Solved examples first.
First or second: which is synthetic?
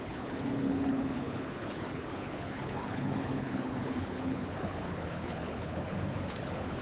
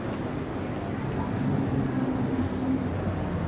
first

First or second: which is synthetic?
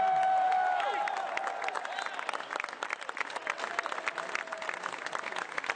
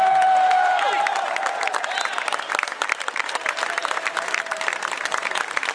second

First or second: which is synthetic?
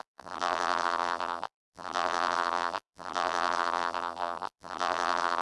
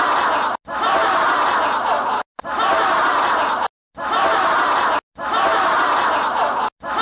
first